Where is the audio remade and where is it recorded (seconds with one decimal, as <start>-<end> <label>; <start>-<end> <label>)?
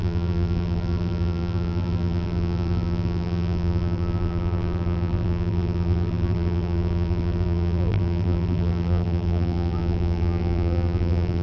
0.0-11.4 remade